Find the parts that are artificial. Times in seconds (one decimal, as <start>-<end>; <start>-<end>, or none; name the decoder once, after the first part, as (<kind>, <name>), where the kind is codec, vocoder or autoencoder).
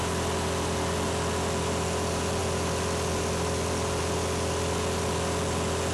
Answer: none